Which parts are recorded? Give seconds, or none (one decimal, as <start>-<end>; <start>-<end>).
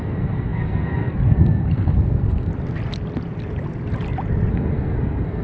2.5-4.5